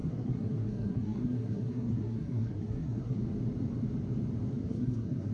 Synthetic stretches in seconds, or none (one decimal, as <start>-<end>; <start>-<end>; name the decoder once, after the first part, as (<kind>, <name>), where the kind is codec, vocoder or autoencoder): 0.0-3.2 (codec, SNAC); 4.6-5.3